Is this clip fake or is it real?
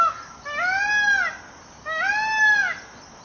real